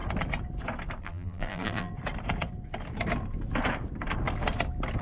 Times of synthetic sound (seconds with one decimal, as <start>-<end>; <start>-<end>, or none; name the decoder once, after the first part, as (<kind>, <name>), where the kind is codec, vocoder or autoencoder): 1.0-1.9 (vocoder, BigVGAN v2)